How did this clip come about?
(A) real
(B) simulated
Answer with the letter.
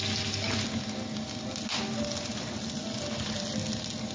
A